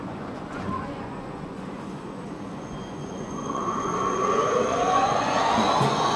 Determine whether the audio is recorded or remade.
remade